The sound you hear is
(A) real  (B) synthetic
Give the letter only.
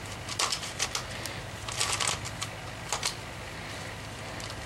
A